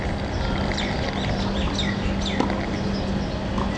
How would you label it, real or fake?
real